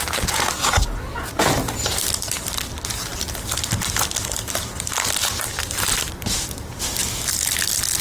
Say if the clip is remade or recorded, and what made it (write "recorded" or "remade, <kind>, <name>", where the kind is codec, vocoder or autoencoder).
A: recorded